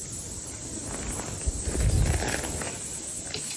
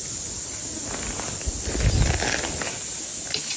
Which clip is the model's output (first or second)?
first